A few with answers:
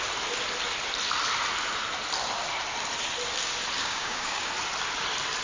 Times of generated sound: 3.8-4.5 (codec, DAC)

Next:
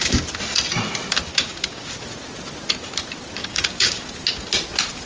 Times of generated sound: 1.3-1.9 (codec, DAC); 3.4-4.1

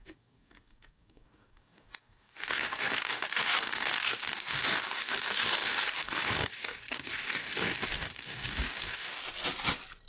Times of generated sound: 0.0-9.2 (codec, DAC)